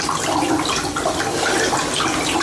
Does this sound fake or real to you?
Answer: real